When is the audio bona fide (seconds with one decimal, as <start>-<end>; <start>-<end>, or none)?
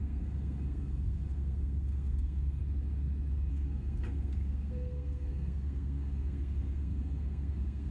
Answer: 2.6-3.5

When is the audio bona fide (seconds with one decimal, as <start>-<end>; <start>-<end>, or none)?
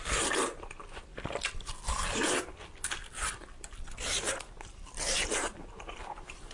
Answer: 1.1-2.5; 3.0-4.6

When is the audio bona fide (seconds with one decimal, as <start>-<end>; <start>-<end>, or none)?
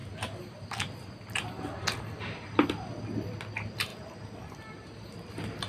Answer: 0.0-5.7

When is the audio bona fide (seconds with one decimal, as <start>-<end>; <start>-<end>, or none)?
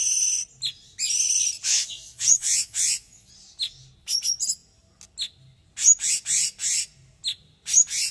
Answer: 0.0-1.7; 3.3-8.1